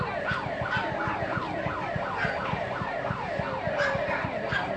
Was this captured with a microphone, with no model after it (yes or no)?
yes